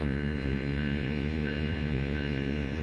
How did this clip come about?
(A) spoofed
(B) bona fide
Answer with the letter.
A